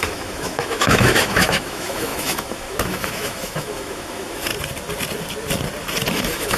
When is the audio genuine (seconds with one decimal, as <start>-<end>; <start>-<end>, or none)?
4.5-6.1